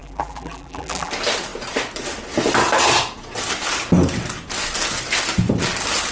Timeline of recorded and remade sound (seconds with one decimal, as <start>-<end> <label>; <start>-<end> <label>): 0.0-1.1 remade; 1.1-6.1 recorded